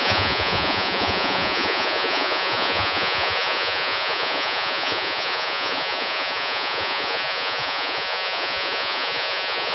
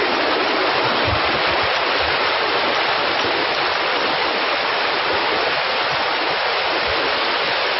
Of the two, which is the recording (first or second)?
second